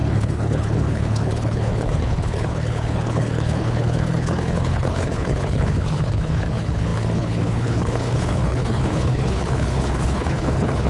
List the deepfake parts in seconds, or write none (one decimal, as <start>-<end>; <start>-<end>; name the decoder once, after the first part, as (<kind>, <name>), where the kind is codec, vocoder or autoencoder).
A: 0.0-10.9 (codec, HILCodec)